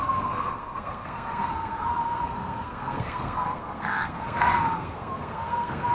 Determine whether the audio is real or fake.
fake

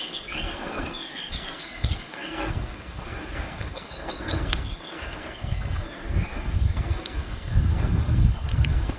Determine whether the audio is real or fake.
fake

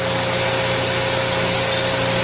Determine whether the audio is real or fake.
real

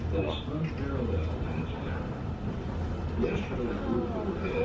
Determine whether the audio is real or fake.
real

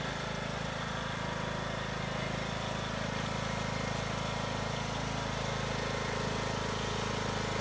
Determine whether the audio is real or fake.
real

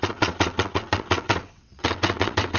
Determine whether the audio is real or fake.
fake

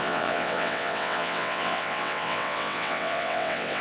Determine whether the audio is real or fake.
fake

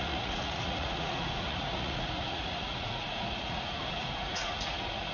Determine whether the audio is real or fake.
fake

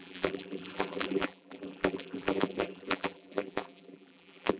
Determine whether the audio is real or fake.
fake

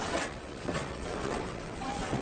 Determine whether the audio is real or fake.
fake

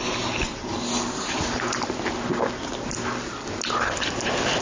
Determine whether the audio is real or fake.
real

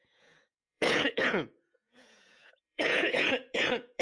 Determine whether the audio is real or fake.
fake